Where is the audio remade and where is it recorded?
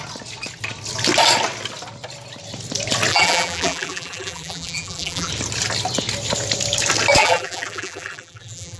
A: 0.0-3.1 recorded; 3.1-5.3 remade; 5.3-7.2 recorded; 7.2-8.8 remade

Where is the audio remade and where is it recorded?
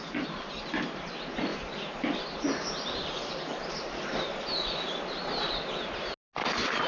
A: 0.0-1.5 recorded; 1.5-5.6 remade; 5.6-6.9 recorded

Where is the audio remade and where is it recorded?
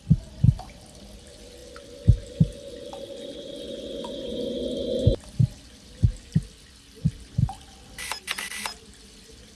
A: 0.0-9.5 recorded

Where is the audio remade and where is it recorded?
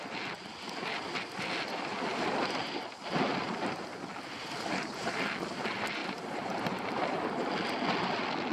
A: 0.0-2.1 recorded; 2.1-2.7 remade; 2.7-6.0 recorded; 6.0-7.8 remade; 7.8-8.5 recorded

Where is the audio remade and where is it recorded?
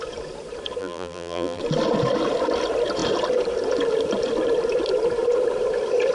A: 0.0-0.8 recorded; 0.8-1.6 remade; 1.6-6.1 recorded